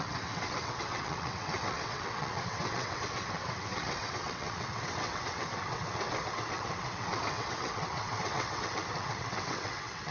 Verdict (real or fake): fake